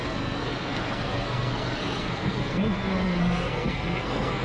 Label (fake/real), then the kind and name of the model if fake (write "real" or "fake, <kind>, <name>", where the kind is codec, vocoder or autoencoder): fake, codec, SNAC